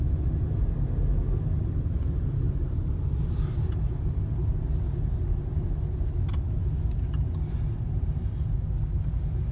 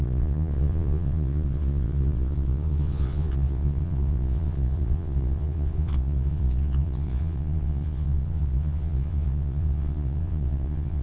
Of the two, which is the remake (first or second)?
second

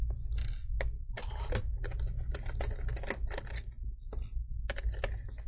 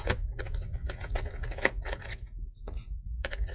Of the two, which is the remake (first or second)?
second